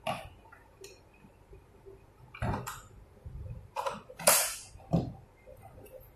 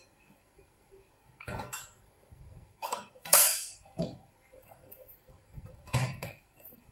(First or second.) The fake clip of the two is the second